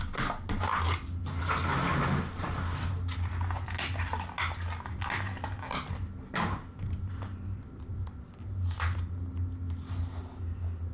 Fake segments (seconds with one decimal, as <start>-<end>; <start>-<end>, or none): none